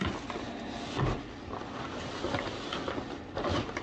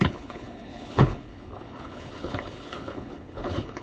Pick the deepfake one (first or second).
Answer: second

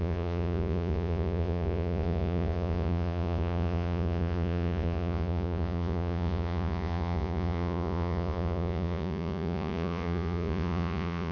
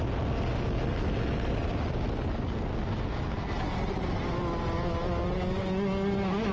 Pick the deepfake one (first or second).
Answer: first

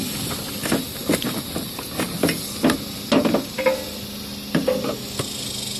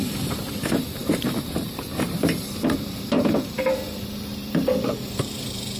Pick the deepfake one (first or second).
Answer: second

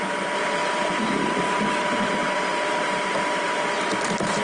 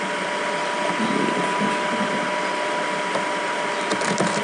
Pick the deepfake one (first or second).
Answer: first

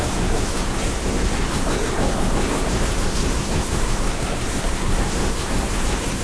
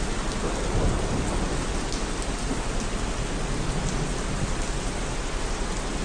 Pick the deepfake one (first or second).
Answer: first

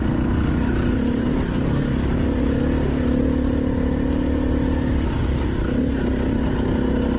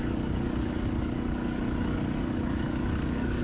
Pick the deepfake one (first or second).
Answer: second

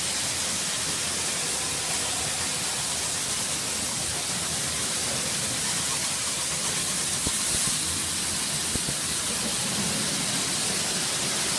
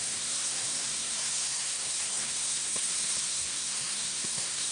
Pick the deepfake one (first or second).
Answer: second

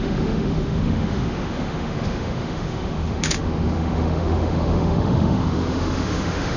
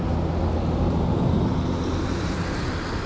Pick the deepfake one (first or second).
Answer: first